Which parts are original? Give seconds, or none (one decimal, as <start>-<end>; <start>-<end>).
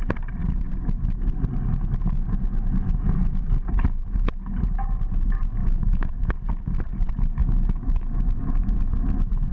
0.0-5.6; 6.3-7.4; 8.8-9.5